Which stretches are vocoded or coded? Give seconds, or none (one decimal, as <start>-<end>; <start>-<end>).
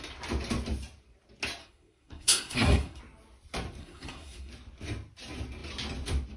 1.6-3.0; 3.8-4.5